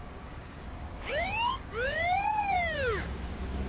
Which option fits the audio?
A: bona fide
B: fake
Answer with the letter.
B